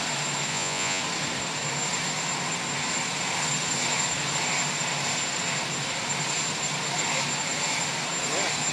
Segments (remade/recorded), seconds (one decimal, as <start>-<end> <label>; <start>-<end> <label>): 0.0-0.5 recorded; 0.5-1.0 remade; 1.0-8.7 recorded